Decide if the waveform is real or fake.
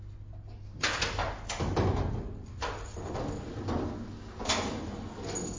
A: real